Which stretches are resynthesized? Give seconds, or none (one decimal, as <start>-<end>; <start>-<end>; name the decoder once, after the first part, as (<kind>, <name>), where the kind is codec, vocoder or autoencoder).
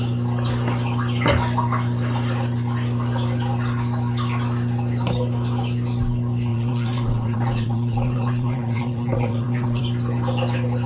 6.5-9.8 (vocoder, WaveNeXt)